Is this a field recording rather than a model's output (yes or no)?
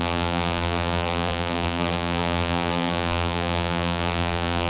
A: no